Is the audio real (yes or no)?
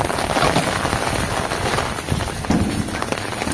no